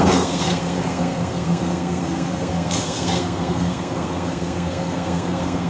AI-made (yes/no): yes